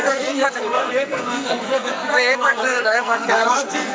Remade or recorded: remade